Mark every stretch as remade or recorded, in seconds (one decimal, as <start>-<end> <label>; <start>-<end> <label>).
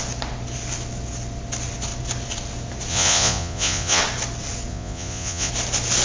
0.0-2.9 recorded; 2.9-4.0 remade; 4.0-4.7 recorded; 4.7-5.5 remade; 5.5-6.0 recorded